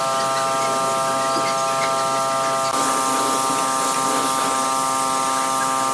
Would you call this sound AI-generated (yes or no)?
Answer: no